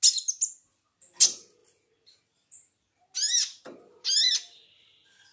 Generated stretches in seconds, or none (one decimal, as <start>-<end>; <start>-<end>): none